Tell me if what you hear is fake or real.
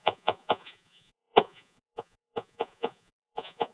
fake